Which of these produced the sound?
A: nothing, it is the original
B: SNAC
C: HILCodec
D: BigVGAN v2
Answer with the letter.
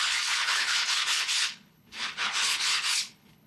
C